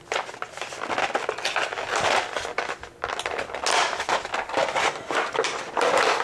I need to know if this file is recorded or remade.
recorded